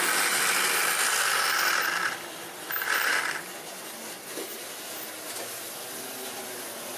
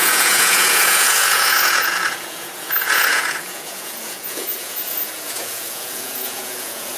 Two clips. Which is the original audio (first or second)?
first